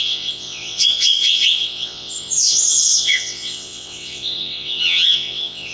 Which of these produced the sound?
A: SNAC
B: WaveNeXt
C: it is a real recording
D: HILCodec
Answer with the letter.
B